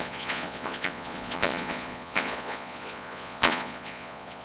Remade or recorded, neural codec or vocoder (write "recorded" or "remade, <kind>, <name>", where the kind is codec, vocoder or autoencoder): remade, vocoder, Vocos